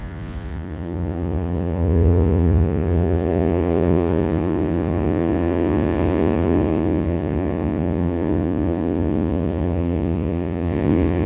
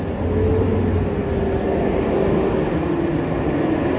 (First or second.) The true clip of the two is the second